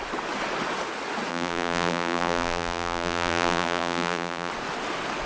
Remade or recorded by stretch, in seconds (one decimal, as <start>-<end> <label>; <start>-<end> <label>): 0.0-1.3 recorded; 1.3-4.5 remade; 4.5-5.3 recorded

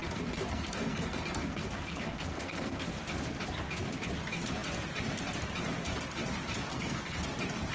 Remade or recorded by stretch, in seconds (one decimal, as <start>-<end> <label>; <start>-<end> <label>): 0.0-3.0 remade; 3.0-6.7 recorded; 6.7-7.2 remade; 7.2-7.7 recorded

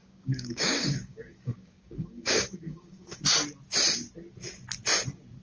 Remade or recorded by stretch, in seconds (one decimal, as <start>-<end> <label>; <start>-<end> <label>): 0.0-3.2 remade; 3.2-5.4 recorded

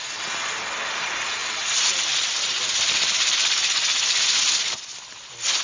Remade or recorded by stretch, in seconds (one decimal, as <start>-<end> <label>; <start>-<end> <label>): 0.0-1.4 recorded; 1.4-4.8 remade; 4.8-5.6 recorded

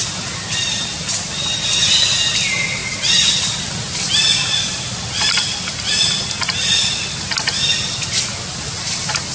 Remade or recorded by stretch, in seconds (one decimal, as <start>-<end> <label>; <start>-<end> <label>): 0.0-9.3 recorded

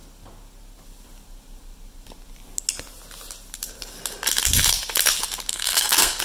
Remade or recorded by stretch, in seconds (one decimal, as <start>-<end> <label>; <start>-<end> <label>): 0.0-5.5 recorded; 5.5-6.2 remade

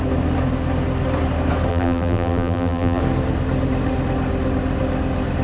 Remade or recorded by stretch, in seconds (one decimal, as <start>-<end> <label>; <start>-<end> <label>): 0.0-1.7 recorded; 1.7-3.0 remade; 3.0-5.4 recorded

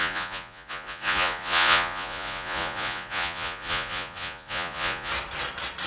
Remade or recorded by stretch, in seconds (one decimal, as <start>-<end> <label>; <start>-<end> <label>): 0.0-5.1 remade; 5.1-5.9 recorded